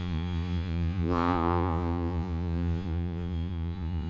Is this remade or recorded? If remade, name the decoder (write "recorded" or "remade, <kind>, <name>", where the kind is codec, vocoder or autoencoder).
remade, vocoder, Vocos